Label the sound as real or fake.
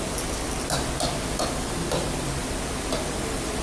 real